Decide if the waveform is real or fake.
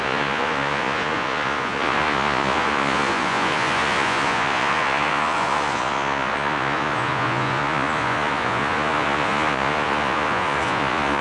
fake